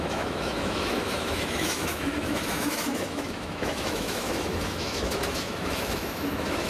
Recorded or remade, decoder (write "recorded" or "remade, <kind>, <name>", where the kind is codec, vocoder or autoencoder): remade, autoencoder, DAC-VAE